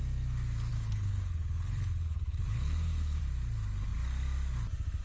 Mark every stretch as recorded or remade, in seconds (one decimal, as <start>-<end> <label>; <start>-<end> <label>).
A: 0.0-0.7 recorded; 0.7-3.2 remade; 3.2-5.0 recorded